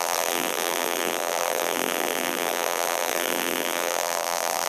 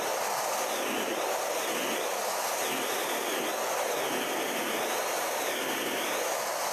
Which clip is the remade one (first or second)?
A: first